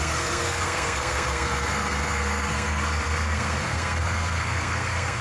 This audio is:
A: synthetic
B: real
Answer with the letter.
A